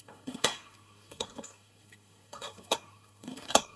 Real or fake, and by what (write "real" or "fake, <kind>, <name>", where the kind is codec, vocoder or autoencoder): fake, codec, SNAC